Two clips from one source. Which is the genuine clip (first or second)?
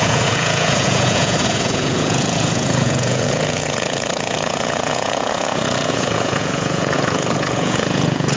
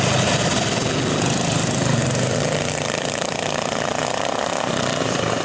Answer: second